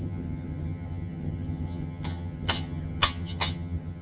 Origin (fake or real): fake